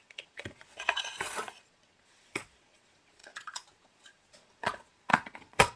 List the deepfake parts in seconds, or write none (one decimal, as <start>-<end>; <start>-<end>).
0.0-5.8